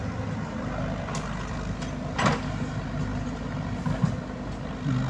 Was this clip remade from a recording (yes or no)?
no